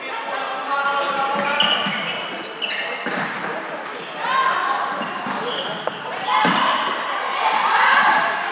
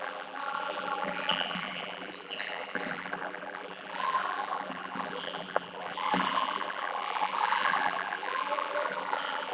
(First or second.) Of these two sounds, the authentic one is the first